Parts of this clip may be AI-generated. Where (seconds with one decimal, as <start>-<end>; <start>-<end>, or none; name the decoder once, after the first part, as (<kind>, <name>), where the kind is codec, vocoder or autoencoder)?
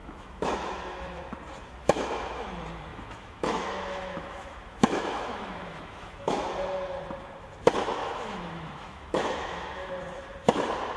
0.0-1.2 (autoencoder, DAC-VAE); 1.8-2.5; 2.9-6.4; 8.0-9.9